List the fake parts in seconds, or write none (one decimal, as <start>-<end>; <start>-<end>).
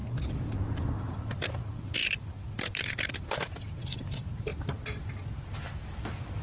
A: 1.0-6.4